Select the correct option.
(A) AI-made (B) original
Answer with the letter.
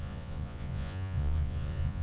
A